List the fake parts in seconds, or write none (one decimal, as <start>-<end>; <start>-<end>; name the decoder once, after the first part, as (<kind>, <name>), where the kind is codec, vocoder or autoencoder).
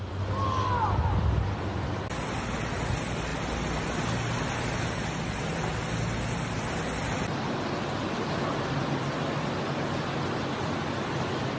none